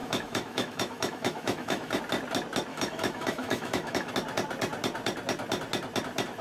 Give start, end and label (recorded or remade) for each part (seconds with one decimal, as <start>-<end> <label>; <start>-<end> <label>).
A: 0.0-2.0 remade; 2.0-2.7 recorded; 2.7-4.1 remade; 4.1-6.4 recorded